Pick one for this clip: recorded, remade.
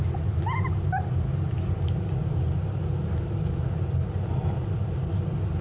recorded